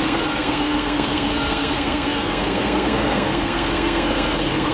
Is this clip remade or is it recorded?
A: remade